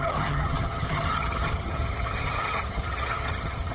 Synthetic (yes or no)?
yes